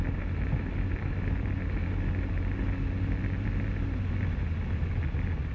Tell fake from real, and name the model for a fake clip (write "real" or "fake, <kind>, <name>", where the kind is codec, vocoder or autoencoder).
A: real